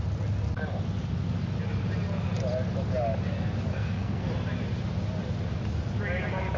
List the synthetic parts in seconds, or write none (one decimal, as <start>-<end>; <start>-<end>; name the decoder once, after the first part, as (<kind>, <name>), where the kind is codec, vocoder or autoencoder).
3.7-4.3 (codec, SNAC)